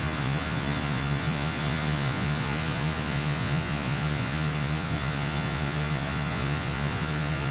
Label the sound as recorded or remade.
remade